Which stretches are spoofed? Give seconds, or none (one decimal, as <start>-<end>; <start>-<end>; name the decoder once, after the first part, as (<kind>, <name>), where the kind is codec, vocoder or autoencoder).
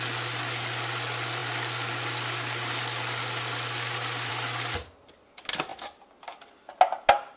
none